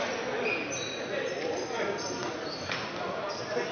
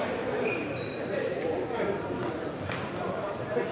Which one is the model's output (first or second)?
second